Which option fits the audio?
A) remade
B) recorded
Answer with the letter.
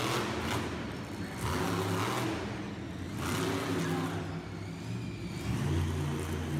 B